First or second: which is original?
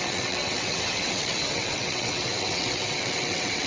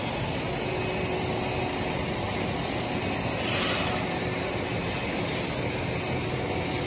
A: second